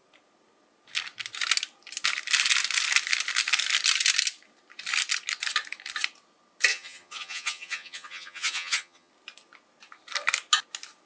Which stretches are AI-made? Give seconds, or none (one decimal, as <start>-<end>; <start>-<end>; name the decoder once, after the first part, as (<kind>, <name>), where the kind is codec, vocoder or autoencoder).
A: 6.7-9.1 (vocoder, HiFi-GAN)